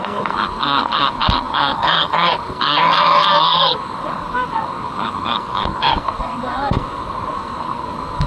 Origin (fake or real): fake